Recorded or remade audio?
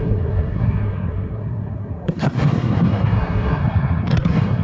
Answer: remade